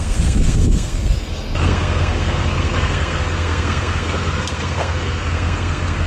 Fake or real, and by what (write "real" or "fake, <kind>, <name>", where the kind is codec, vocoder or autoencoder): fake, codec, SNAC